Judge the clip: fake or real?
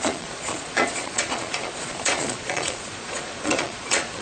fake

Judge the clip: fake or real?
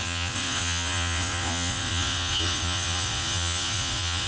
fake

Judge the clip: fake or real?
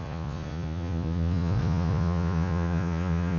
fake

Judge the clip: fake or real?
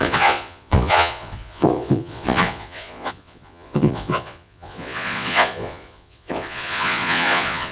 fake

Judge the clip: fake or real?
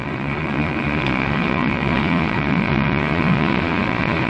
fake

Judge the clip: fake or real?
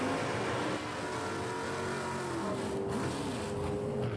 real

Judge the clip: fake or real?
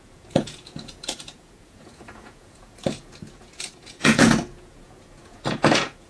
fake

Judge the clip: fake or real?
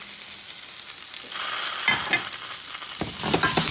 real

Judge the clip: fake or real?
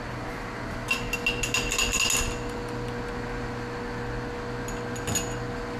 real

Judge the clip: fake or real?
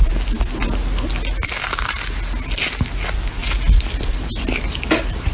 real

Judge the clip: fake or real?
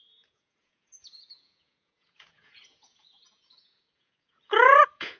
fake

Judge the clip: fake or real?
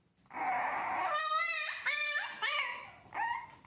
real